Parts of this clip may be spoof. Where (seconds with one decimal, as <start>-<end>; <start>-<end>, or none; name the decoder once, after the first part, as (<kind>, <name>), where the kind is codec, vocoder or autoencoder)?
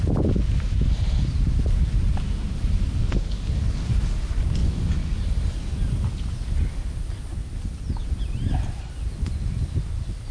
8.0-8.8 (vocoder, BigVGAN v2)